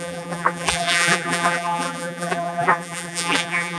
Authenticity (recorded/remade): remade